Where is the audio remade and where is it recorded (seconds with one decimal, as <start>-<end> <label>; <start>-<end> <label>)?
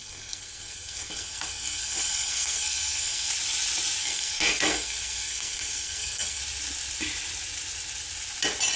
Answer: 0.0-3.3 remade; 3.3-4.0 recorded; 4.0-6.4 remade; 6.4-8.8 recorded